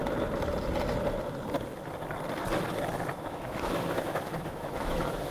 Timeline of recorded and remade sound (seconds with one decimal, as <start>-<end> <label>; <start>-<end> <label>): 0.0-3.1 recorded; 3.1-5.3 remade